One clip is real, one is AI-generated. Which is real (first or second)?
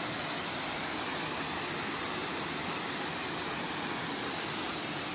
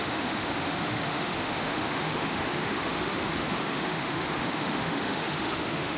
first